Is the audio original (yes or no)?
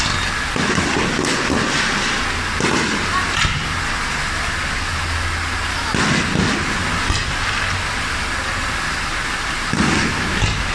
yes